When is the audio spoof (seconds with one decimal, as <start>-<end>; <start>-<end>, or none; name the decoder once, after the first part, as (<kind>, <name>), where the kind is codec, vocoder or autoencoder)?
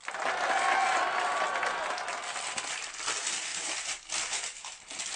none